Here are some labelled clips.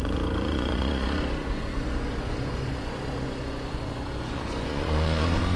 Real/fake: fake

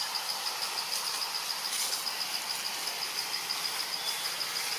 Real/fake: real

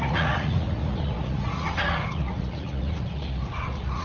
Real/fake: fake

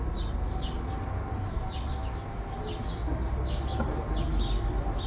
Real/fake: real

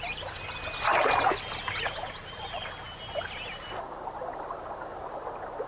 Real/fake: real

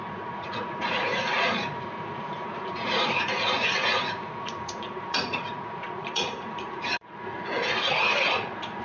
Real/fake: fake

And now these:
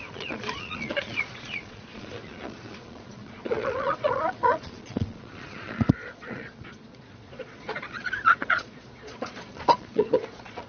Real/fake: fake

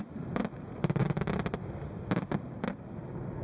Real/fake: real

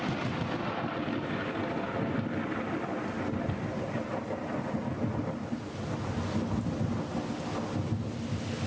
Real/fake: real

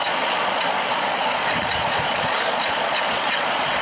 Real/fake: fake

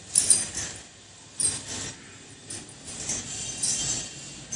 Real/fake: real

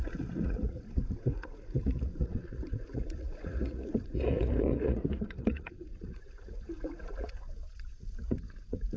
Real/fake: fake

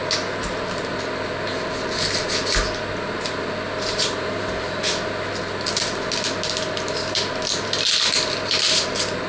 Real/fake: real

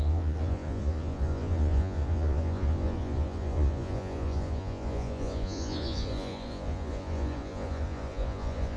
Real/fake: fake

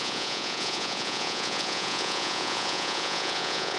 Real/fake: fake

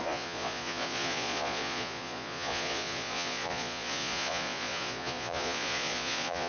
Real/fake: fake